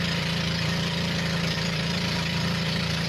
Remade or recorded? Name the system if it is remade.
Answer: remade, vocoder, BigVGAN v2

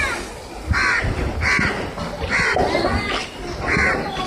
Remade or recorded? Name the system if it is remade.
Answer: recorded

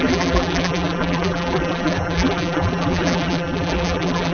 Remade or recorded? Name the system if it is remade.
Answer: remade, vocoder, BigVGAN v2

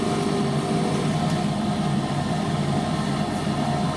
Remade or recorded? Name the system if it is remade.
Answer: recorded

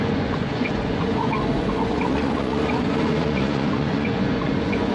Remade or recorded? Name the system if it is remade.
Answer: remade, vocoder, Vocos